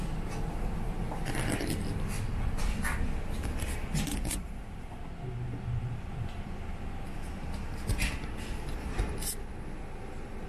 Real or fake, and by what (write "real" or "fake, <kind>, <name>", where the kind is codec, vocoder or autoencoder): real